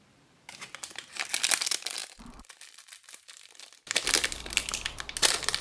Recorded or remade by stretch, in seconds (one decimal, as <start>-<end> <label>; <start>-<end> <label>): 0.0-5.6 recorded